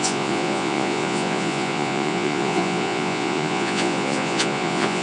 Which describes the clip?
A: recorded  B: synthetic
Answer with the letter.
B